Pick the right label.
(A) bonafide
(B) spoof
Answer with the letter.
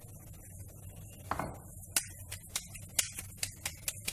A